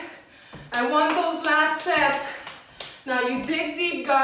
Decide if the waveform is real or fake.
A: real